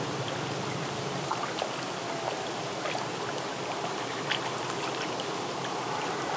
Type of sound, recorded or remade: recorded